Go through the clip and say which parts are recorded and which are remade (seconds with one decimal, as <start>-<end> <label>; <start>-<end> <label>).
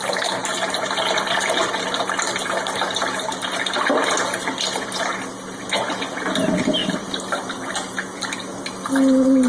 0.0-9.5 recorded